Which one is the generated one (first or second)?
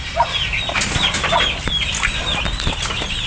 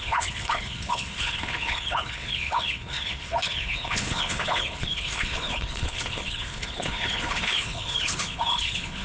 second